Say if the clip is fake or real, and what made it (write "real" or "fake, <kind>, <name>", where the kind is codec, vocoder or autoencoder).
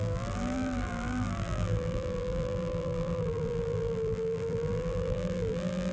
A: fake, vocoder, BigVGAN v2